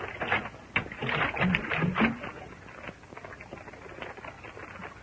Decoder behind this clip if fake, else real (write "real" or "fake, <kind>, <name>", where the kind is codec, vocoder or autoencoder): real